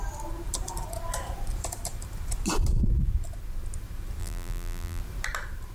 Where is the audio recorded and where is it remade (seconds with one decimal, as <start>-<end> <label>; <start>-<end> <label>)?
0.0-4.2 recorded; 4.2-5.0 remade; 5.0-5.7 recorded